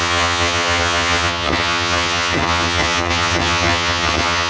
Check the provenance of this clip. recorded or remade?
remade